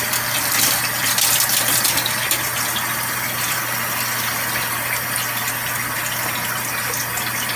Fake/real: real